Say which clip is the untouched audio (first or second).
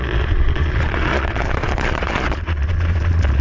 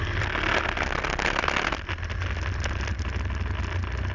second